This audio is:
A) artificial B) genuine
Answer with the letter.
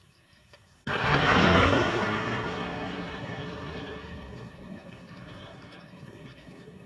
A